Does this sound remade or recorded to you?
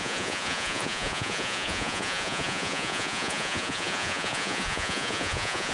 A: remade